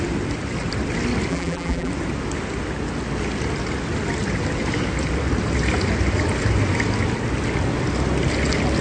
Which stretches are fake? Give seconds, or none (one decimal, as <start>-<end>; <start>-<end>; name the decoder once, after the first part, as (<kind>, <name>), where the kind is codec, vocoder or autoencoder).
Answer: 1.3-1.9 (vocoder, BigVGAN v2)